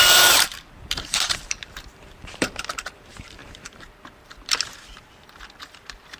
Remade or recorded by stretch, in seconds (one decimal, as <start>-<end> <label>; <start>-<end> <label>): 0.0-6.2 remade